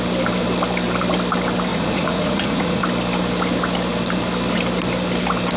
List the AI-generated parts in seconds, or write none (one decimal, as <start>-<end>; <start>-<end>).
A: 1.7-2.8